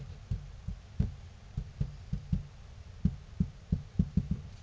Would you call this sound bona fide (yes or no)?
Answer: yes